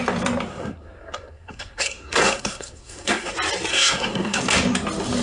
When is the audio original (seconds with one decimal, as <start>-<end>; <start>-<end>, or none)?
0.0-0.5; 3.3-3.7; 4.4-5.2